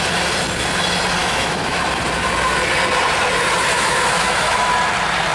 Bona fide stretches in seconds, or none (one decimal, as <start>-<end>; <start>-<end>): 0.0-1.2; 1.8-3.7; 4.7-5.3

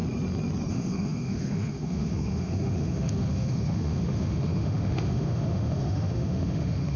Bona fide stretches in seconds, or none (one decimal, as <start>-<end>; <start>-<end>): 0.0-0.7

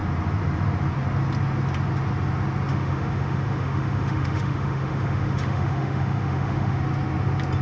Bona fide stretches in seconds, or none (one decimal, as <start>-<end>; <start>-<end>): 0.0-2.7; 6.8-7.6